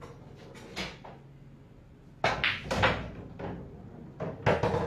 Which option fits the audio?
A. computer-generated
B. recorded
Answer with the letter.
B